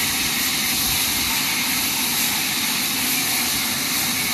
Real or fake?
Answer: real